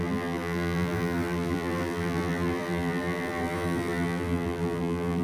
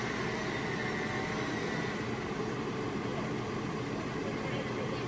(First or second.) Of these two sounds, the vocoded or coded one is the first